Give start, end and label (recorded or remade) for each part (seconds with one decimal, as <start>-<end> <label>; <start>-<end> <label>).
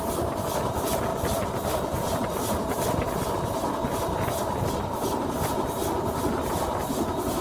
0.0-7.4 recorded